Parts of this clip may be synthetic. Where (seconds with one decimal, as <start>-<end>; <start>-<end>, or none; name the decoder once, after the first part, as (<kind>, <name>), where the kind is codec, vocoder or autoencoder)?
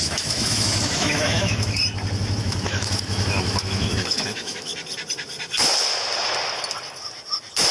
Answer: 0.0-1.8 (autoencoder, DAC-VAE); 2.4-4.7